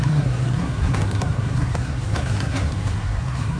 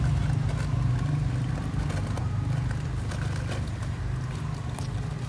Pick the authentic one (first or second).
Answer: second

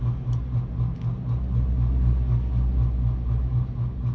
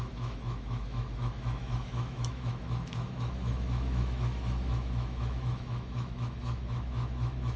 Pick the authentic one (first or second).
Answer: first